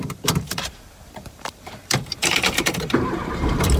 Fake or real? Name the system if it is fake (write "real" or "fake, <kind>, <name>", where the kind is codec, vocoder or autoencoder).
fake, vocoder, BigVGAN v2